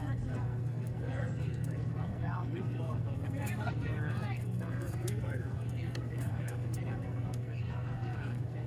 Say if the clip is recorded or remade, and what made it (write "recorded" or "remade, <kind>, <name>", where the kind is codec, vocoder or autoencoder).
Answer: remade, codec, SNAC